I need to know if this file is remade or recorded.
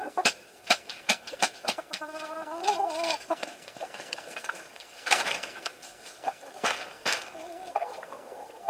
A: remade